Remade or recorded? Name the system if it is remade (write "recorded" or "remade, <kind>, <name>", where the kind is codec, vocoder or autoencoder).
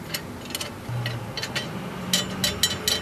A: recorded